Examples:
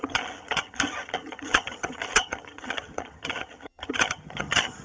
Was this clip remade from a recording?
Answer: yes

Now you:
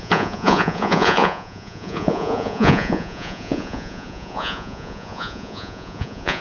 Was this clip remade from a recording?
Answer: yes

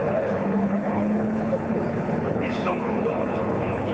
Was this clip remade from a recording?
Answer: yes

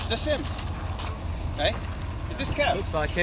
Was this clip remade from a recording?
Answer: no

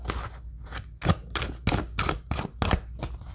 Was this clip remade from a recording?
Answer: no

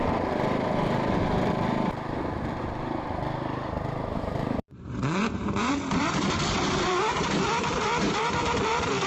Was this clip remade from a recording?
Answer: yes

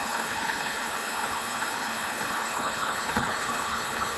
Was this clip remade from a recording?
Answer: yes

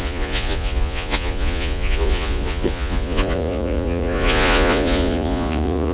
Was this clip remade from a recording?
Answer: yes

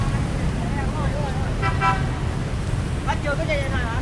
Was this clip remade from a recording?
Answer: no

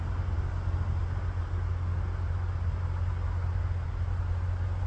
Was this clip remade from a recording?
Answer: no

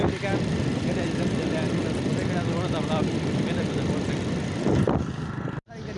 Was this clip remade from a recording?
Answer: no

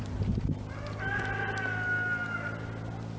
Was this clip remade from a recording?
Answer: no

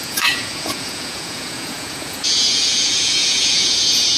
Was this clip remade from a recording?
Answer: yes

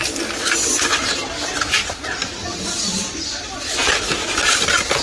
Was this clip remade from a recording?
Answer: no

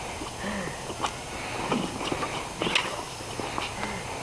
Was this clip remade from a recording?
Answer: no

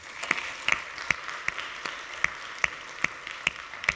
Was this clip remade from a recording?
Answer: no